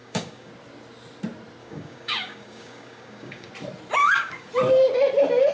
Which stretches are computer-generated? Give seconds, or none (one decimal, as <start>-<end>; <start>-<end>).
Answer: 0.0-0.5; 1.6-3.5; 4.0-4.5